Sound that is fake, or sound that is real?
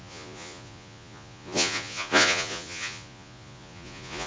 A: fake